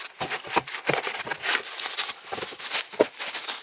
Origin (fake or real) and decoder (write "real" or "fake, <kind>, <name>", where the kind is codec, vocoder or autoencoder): real